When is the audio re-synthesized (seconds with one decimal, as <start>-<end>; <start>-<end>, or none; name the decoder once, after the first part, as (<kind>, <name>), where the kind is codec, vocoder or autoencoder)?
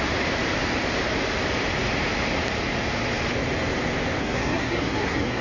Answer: 4.2-5.4 (codec, SNAC)